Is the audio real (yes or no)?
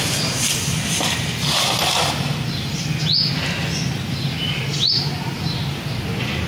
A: yes